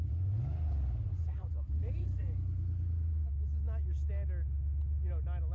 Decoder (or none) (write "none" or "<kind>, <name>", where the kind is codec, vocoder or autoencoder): none